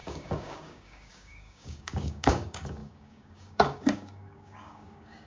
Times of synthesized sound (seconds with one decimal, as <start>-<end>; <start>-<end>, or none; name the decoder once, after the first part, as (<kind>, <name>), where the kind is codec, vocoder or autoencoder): 0.0-5.3 (codec, DAC)